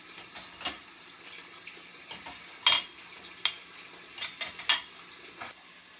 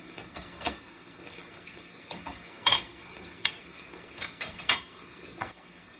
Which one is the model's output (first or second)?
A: second